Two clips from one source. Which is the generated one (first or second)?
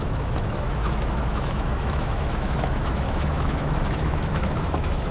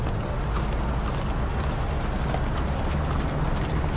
first